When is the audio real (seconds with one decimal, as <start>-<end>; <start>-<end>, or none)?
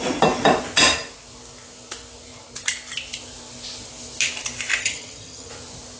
0.0-4.8; 5.5-6.0